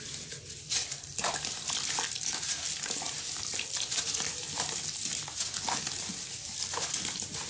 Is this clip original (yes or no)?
yes